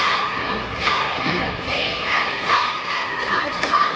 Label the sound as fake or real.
fake